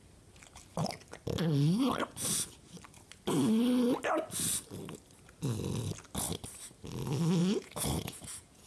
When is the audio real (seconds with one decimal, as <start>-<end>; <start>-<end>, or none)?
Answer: 0.0-7.4

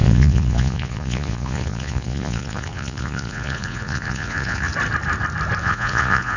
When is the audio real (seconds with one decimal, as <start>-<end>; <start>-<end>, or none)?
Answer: 4.7-5.6